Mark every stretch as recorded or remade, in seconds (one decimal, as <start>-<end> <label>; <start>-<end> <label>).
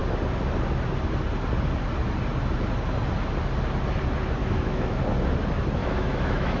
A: 0.0-4.4 recorded; 4.4-5.0 remade; 5.0-5.8 recorded; 5.8-6.6 remade